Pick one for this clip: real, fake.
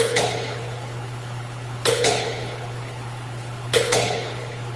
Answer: fake